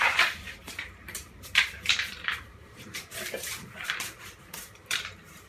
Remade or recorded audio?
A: remade